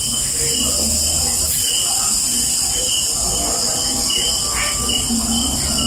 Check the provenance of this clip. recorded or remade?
recorded